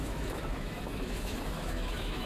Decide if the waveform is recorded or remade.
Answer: remade